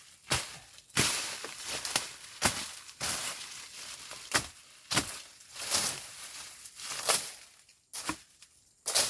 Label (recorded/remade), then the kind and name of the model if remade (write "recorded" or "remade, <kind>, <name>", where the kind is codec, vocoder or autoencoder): recorded